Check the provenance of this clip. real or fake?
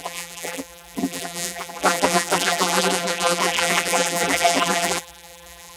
fake